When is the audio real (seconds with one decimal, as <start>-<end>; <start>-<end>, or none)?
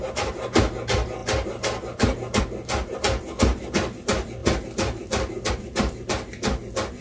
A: 0.0-7.0